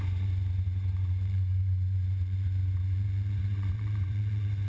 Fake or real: fake